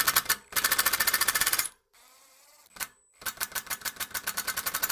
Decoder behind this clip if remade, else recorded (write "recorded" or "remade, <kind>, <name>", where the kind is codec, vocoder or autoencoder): remade, vocoder, BigVGAN v2